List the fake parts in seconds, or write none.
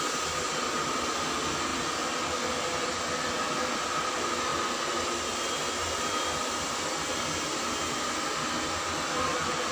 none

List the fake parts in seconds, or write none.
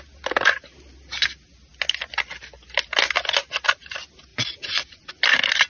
4.3-5.1 (vocoder, Vocos)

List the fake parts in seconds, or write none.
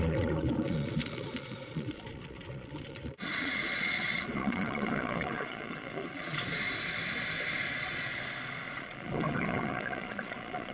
0.0-6.5 (vocoder, Vocos); 7.7-8.1; 8.7-10.7